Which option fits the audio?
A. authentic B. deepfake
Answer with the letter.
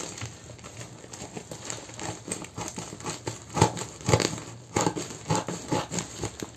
A